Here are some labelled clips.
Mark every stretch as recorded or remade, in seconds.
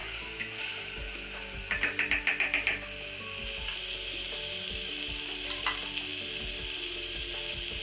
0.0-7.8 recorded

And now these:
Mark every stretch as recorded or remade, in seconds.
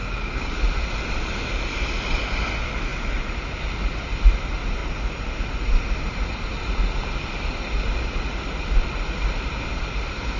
0.0-0.5 remade; 0.5-10.4 recorded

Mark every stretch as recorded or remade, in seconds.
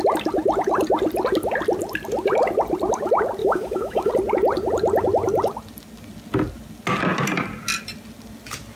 0.0-3.4 recorded; 3.4-4.1 remade; 4.1-8.8 recorded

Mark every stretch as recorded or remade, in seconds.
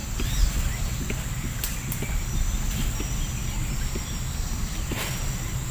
0.0-5.7 recorded